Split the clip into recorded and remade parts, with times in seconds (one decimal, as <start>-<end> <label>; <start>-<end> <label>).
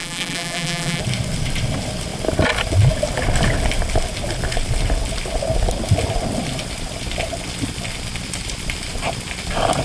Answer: 0.0-1.0 remade; 1.0-9.8 recorded